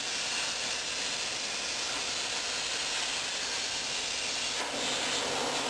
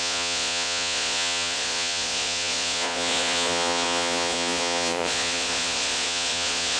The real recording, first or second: first